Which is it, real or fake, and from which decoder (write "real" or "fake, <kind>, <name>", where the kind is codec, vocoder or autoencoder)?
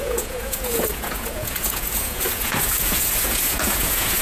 fake, vocoder, Vocos